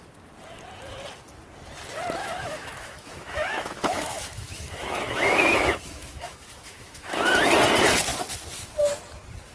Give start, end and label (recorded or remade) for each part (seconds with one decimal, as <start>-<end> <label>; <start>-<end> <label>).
0.0-2.2 recorded; 2.2-7.3 remade; 7.3-9.5 recorded